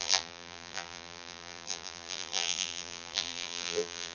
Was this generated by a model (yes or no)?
yes